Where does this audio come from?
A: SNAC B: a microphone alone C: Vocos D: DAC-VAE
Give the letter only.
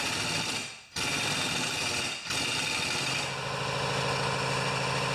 B